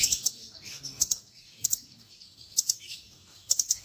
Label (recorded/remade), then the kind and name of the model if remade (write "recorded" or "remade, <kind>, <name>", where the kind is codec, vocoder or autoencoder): remade, codec, DAC